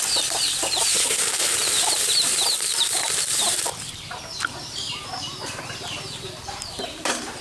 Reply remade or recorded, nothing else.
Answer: remade